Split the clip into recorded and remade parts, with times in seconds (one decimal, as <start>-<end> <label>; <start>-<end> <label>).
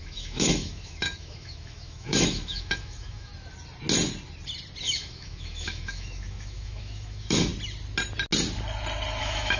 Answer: 0.0-3.3 remade; 3.3-4.8 recorded; 4.8-7.5 remade; 7.5-9.2 recorded; 9.2-9.6 remade